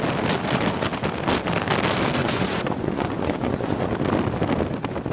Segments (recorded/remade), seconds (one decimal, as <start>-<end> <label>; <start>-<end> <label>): 0.0-2.2 recorded; 2.2-3.9 remade; 3.9-5.1 recorded